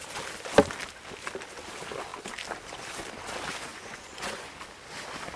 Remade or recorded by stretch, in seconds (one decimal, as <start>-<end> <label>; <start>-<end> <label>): 0.0-3.7 recorded; 3.7-4.5 remade; 4.5-5.4 recorded